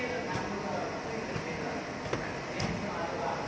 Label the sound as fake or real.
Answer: real